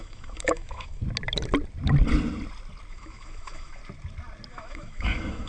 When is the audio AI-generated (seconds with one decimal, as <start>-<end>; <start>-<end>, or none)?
0.0-1.0; 2.9-3.8; 4.5-5.5